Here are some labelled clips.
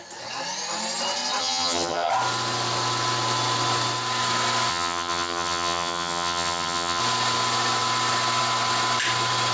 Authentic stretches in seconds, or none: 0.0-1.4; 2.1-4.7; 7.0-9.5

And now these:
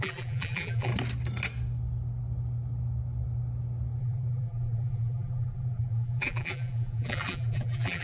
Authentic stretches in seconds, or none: 0.9-4.0

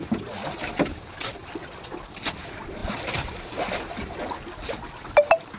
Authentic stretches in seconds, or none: 0.0-5.6

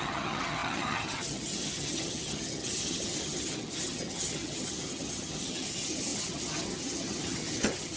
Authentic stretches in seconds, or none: none

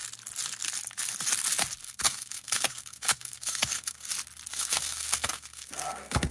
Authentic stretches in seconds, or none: 0.0-1.8; 4.1-4.5

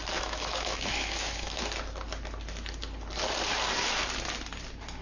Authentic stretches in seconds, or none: 1.6-5.0

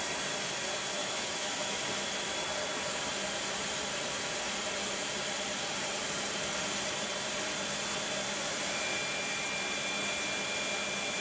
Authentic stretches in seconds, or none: 0.0-1.0; 1.8-11.2

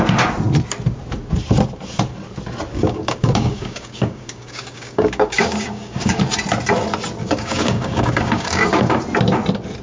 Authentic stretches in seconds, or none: 0.0-2.7; 6.2-7.2; 9.0-9.8